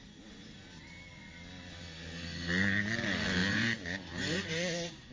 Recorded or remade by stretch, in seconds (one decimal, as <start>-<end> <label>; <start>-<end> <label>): 0.0-3.4 recorded; 3.4-5.1 remade